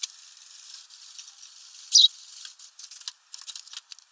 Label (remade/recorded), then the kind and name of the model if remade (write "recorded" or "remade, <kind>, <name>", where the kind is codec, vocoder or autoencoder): recorded